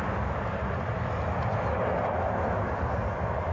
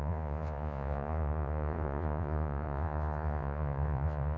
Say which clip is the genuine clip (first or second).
first